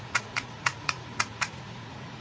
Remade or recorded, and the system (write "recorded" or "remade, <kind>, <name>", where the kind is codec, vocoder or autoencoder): remade, vocoder, Vocos